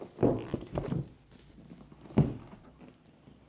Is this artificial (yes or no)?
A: yes